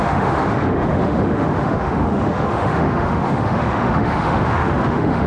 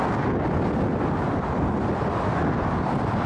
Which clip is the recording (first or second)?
second